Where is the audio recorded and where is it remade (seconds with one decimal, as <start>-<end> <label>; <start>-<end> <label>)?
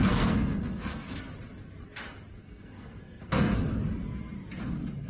0.0-1.3 remade; 1.3-2.4 recorded; 2.4-3.6 remade; 3.6-5.1 recorded